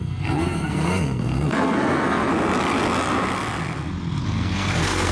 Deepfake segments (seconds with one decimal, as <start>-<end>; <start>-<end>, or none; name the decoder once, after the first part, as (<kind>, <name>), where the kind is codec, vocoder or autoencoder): 0.0-2.3 (codec, SNAC); 4.2-5.1